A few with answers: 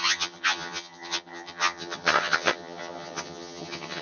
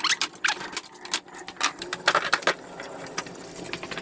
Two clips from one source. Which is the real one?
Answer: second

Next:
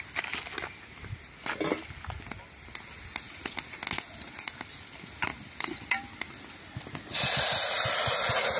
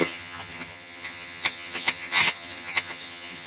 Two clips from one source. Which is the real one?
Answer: first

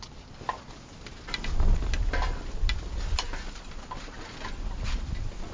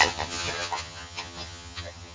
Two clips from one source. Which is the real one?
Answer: first